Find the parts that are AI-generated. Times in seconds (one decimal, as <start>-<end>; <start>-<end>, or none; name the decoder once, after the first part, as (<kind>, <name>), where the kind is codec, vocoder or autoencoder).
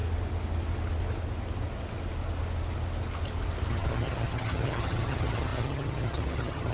3.7-6.7 (vocoder, HiFi-GAN)